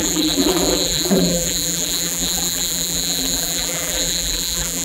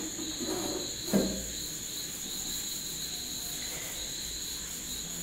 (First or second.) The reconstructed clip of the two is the first